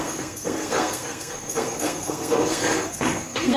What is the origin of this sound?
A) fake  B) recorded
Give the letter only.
A